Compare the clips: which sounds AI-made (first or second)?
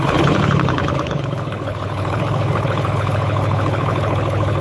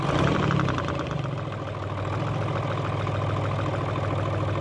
first